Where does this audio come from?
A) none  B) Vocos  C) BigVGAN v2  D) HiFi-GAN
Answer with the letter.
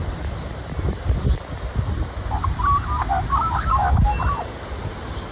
A